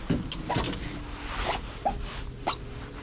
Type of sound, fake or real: real